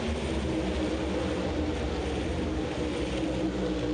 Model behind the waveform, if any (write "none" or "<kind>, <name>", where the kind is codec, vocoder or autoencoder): none